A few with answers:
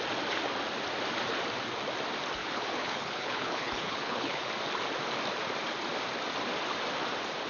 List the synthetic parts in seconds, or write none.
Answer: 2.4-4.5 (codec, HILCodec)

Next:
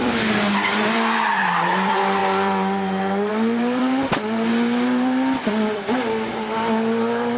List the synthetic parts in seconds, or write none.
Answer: 0.0-7.4 (vocoder, BigVGAN v2)